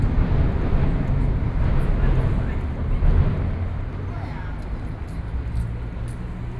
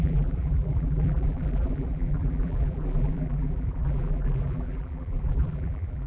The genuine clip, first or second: first